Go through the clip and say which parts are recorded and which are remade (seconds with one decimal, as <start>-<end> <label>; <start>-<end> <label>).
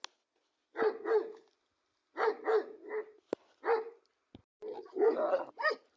0.0-4.4 recorded; 4.4-5.5 remade; 5.5-6.0 recorded